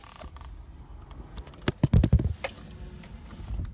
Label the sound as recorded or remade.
recorded